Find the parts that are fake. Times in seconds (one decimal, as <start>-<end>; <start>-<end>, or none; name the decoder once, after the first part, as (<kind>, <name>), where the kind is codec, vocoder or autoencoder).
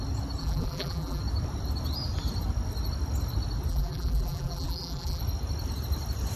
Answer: 0.4-1.2 (vocoder, BigVGAN v2); 3.7-5.2